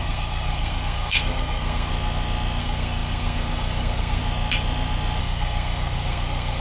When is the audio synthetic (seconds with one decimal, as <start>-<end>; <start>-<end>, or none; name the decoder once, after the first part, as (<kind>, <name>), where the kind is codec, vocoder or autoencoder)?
0.0-1.9 (codec, SNAC); 2.6-4.2; 5.2-6.6

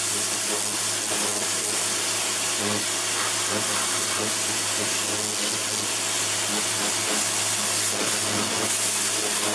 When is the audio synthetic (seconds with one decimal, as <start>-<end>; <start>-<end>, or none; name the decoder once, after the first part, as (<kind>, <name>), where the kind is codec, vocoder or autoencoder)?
none

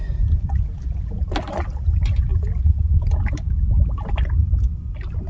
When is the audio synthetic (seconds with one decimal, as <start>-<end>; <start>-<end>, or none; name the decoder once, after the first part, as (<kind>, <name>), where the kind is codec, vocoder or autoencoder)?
none

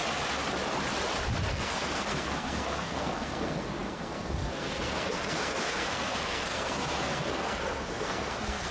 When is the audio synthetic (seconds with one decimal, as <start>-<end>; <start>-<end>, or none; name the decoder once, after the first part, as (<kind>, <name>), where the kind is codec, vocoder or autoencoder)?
1.5-8.7 (codec, SNAC)

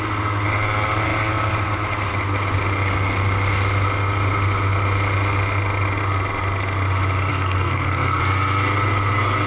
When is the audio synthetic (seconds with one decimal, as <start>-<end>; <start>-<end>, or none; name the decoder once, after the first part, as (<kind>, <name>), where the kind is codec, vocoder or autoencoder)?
7.3-8.2 (codec, SNAC)

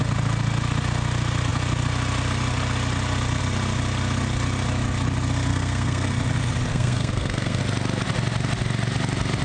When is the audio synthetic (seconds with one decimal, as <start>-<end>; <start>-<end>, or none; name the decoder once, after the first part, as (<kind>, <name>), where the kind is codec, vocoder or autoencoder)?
5.5-6.1 (codec, SNAC); 6.7-7.6